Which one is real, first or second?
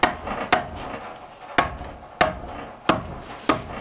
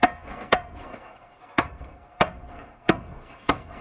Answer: first